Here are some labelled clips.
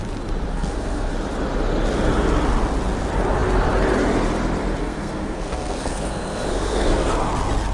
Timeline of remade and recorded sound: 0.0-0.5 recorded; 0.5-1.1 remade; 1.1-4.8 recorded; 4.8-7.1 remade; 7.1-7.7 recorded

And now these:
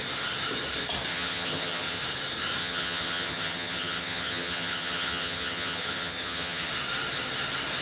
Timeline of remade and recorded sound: 0.0-1.1 recorded; 1.1-2.0 remade; 2.0-2.6 recorded; 2.6-6.7 remade; 6.7-7.8 recorded